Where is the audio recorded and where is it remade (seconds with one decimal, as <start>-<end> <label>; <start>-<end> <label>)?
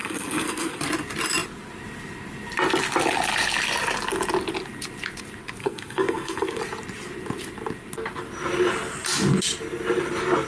0.0-0.8 remade; 0.8-5.6 recorded; 5.6-6.6 remade; 6.6-10.5 recorded